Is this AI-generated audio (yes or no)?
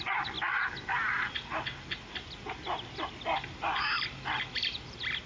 no